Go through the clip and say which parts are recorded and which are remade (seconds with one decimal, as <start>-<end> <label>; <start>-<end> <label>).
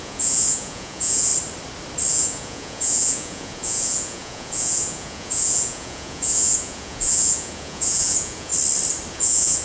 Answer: 0.0-1.3 remade; 1.3-2.1 recorded; 2.1-8.5 remade; 8.5-9.1 recorded; 9.1-9.6 remade